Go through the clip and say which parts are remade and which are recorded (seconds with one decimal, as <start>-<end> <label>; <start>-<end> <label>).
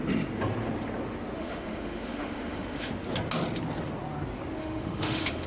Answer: 0.0-1.4 recorded; 1.4-2.9 remade; 2.9-4.6 recorded; 4.6-5.5 remade